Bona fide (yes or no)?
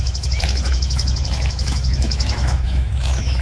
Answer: no